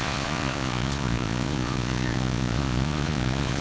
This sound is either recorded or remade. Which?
remade